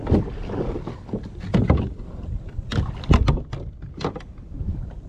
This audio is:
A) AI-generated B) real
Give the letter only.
B